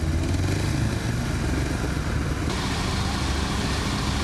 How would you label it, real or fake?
real